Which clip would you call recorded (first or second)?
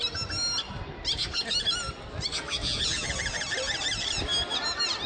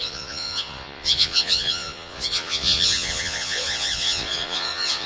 first